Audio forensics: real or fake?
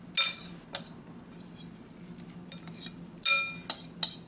real